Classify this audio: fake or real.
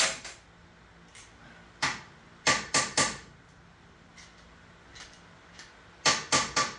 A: real